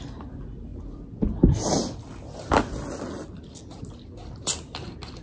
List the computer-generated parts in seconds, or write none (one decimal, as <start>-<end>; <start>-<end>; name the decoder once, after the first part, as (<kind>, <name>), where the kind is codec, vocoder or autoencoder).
none